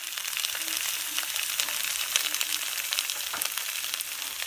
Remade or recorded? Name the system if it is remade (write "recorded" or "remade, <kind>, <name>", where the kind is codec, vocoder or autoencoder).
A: recorded